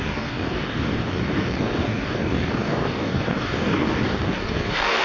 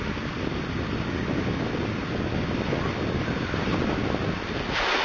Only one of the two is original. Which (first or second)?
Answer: second